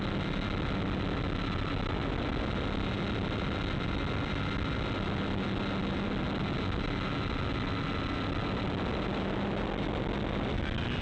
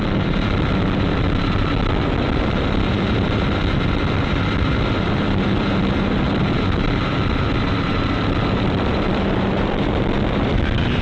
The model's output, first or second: second